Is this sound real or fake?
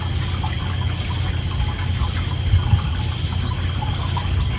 real